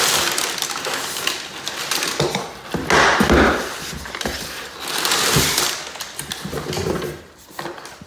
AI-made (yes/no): no